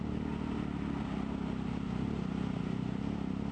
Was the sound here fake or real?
real